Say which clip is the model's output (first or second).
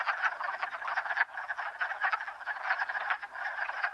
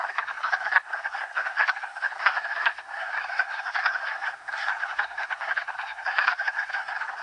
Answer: second